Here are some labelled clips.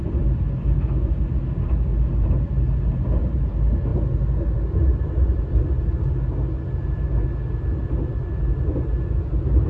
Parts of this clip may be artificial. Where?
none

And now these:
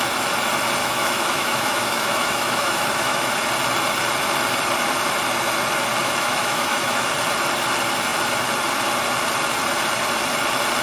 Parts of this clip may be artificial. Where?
0.8-3.3 (autoencoder, DAC-VAE); 6.0-7.1

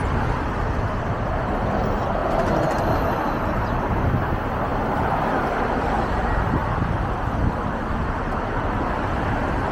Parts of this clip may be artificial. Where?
none

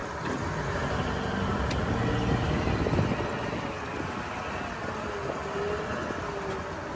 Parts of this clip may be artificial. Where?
none